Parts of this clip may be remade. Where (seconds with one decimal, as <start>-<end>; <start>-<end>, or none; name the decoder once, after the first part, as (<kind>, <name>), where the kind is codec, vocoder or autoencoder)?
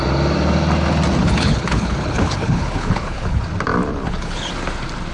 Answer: 1.2-3.4 (codec, HILCodec); 3.9-4.5